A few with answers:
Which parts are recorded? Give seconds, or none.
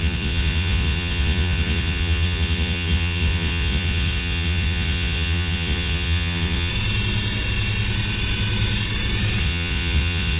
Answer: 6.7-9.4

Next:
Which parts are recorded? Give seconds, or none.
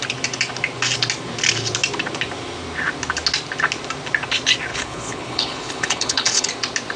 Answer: 0.0-4.7; 6.5-7.0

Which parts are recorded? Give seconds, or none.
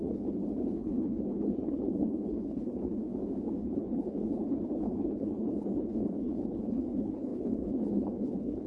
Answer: 3.1-3.6